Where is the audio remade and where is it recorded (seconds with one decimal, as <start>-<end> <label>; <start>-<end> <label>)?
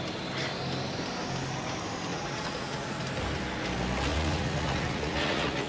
0.0-2.1 recorded; 2.1-3.0 remade; 3.0-4.1 recorded; 4.1-5.7 remade